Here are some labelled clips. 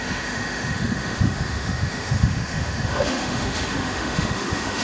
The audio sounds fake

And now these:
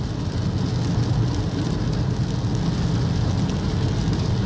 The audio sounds real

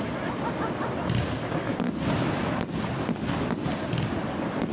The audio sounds real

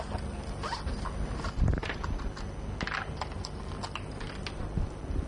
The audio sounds real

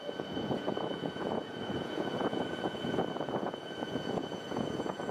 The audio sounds fake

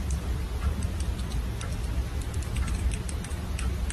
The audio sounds real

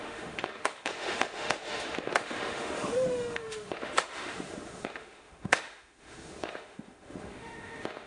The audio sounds fake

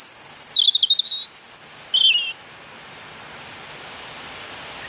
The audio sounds real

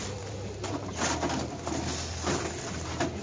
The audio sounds real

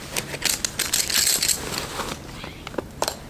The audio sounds real